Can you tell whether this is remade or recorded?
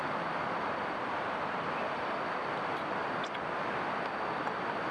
recorded